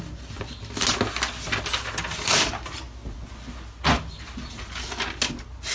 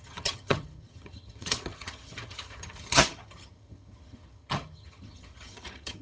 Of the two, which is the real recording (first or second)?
first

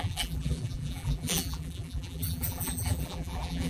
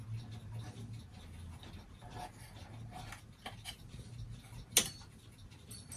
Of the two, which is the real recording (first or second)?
second